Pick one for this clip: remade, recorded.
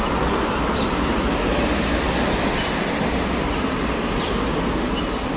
recorded